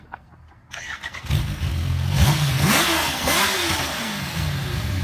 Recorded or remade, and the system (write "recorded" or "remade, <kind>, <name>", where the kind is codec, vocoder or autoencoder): remade, codec, SNAC